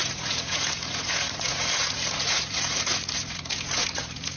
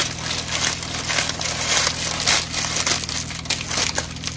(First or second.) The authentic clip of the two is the second